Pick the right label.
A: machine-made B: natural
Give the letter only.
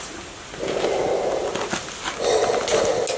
B